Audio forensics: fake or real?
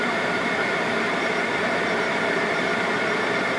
fake